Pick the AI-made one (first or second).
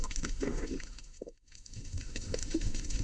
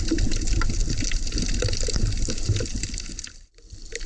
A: first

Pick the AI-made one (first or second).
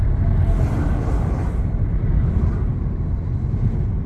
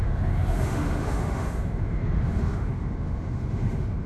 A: second